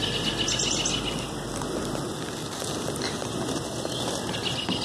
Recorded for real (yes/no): yes